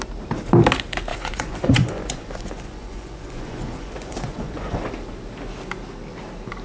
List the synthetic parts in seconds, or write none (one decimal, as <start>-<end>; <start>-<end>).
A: 1.1-4.9